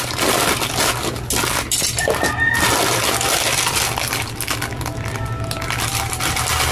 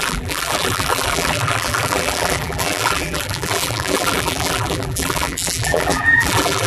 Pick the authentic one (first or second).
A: first